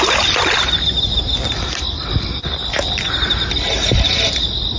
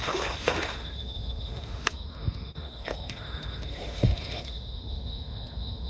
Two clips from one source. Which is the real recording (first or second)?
first